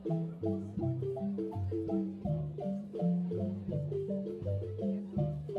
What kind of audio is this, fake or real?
fake